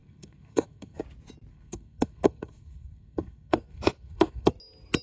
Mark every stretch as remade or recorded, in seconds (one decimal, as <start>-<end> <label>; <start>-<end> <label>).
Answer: 0.0-1.0 remade; 1.0-1.5 recorded; 1.5-4.5 remade; 4.5-5.0 recorded